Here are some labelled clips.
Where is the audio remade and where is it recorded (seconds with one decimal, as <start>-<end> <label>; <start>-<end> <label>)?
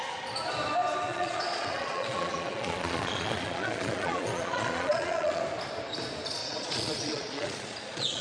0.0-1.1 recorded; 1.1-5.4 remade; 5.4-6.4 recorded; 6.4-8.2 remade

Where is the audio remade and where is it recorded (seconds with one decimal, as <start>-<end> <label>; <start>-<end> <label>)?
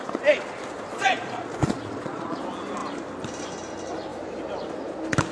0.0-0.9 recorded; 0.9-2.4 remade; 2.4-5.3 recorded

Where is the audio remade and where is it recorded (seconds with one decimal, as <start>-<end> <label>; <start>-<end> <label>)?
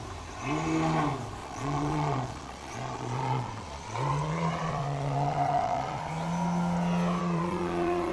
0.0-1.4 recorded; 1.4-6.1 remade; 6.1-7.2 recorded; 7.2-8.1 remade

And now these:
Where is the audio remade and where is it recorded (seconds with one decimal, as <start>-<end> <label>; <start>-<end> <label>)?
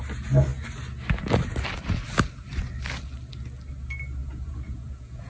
0.0-4.2 recorded; 4.2-5.3 remade